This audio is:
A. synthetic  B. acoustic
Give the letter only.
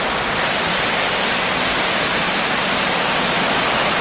B